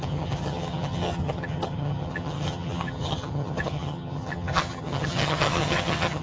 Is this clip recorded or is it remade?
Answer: remade